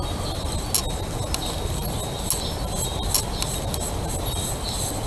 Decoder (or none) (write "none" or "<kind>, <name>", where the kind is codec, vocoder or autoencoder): none